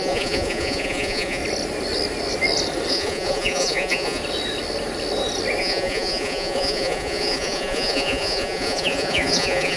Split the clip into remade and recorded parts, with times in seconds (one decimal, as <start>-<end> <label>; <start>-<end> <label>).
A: 0.0-1.4 remade; 1.4-2.9 recorded; 2.9-4.2 remade; 4.2-5.6 recorded; 5.6-9.8 remade